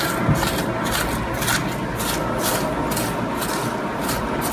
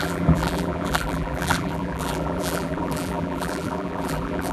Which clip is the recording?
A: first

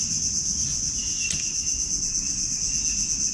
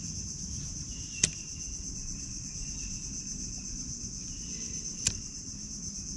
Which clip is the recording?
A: first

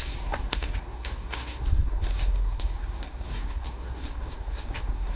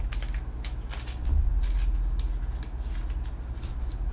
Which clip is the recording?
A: second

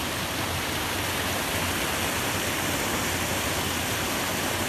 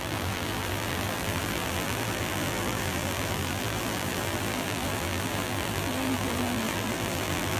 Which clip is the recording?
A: first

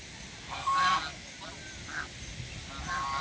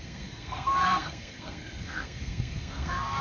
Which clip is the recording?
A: first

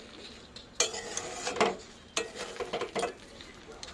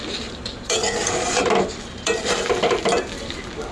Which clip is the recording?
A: first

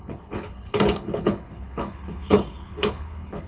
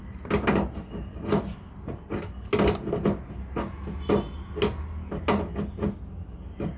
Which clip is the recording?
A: second